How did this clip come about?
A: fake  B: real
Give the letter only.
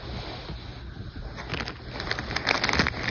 B